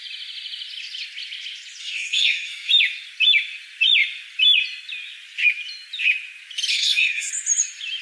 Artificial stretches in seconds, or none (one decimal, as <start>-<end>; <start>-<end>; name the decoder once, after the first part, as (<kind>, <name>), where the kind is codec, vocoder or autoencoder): 1.8-2.7 (codec, SNAC); 6.7-7.3